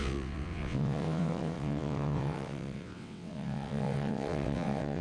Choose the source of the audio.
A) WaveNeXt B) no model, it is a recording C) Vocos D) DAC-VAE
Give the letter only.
A